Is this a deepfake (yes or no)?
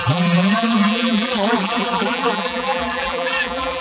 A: yes